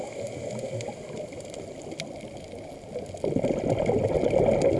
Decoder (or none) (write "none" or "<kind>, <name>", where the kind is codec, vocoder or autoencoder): none